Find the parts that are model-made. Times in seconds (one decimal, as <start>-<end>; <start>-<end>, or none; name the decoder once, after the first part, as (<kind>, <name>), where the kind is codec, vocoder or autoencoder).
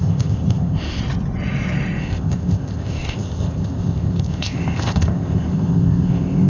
0.0-1.0 (codec, ZipCodec); 2.0-6.5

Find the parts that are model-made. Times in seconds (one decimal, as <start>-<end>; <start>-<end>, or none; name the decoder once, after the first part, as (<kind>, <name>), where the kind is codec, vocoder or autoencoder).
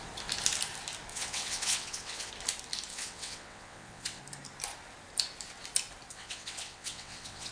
1.1-2.3 (vocoder, WaveNeXt); 2.9-4.2; 6.1-7.5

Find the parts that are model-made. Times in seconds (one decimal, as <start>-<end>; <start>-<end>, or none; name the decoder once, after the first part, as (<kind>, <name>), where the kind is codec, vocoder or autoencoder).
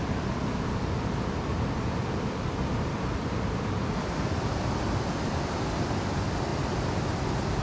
none